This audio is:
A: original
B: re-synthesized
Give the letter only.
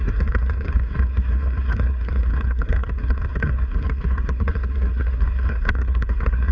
B